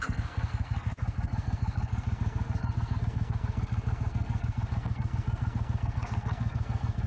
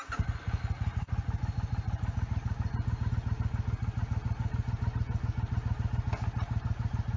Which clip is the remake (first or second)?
first